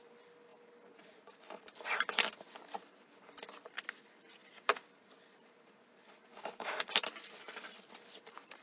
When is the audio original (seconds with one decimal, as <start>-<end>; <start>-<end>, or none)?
0.0-6.3; 6.9-8.6